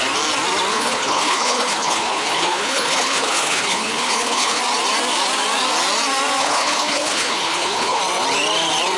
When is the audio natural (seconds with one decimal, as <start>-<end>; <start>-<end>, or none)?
0.0-0.7; 4.6-6.4; 8.0-9.0

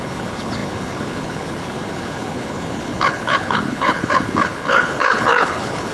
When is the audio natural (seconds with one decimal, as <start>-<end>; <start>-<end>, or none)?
none

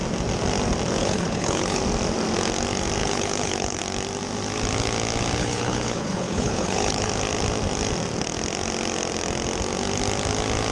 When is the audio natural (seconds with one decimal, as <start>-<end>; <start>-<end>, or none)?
0.0-1.0; 1.8-3.0; 3.8-5.4; 7.1-10.7

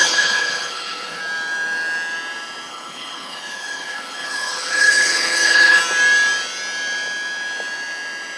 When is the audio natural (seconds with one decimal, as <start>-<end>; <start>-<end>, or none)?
1.2-2.7; 5.8-8.4

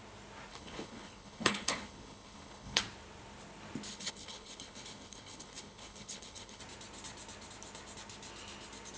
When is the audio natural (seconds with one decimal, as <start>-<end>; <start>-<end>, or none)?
0.0-0.5; 2.8-3.9; 6.6-9.0

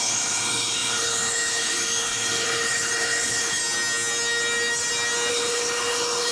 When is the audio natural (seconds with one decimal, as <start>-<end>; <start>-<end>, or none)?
3.6-5.3